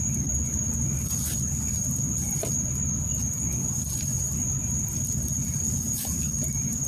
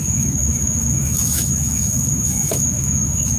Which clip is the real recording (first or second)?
first